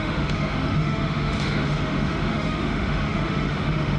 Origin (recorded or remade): remade